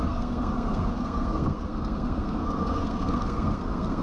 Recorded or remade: remade